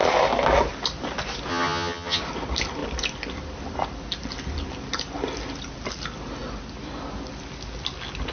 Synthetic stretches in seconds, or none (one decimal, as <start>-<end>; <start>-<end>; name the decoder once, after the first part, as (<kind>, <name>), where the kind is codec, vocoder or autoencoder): 1.5-2.2 (vocoder, HiFi-GAN)